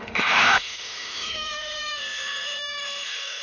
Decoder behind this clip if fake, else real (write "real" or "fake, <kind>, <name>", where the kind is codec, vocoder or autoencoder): fake, autoencoder, DAC-VAE